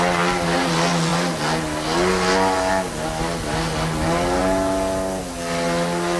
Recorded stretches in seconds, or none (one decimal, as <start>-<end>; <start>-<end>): 0.0-6.2